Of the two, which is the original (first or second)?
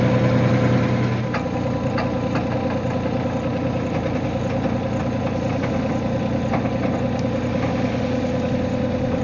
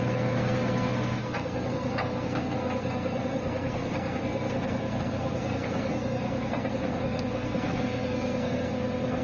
first